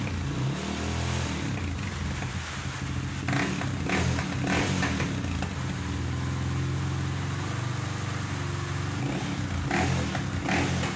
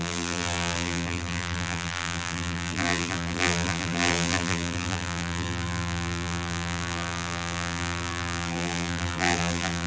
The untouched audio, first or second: first